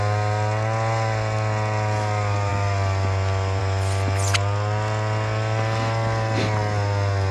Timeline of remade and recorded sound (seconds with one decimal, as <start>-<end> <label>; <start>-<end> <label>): 0.0-7.3 recorded

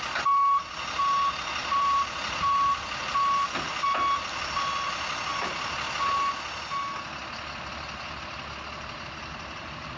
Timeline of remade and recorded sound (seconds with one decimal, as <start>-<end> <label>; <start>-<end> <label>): 0.0-1.6 recorded; 1.6-2.4 remade; 2.4-7.2 recorded; 7.2-10.0 remade

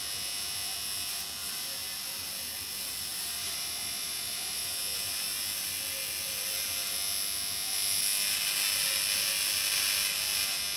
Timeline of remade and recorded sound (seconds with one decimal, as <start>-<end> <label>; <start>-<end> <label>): 0.0-3.1 recorded; 3.1-4.8 remade; 4.8-10.8 recorded